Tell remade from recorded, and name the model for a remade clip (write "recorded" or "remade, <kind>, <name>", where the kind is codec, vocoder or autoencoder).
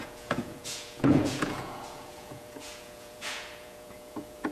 remade, vocoder, Vocos